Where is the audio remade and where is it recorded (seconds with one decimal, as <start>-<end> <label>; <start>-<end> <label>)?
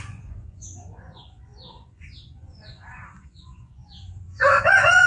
0.0-5.1 remade